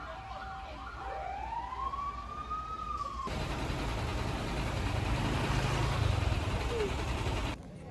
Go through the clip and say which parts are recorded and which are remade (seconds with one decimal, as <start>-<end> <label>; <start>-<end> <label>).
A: 0.0-7.9 recorded